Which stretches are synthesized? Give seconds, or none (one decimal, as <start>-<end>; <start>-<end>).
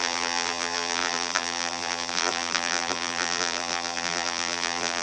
0.0-5.0